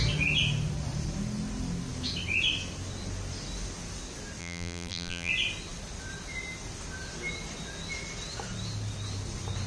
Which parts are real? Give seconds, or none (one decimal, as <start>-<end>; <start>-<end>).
0.0-4.4; 5.3-9.7